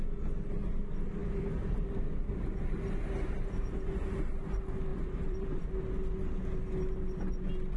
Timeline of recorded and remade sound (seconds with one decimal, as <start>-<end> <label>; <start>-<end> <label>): 0.0-1.2 recorded; 1.2-2.4 remade; 2.4-4.9 recorded; 4.9-5.6 remade; 5.6-7.8 recorded